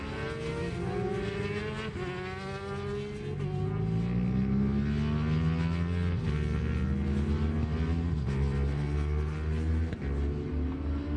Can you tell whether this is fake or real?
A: real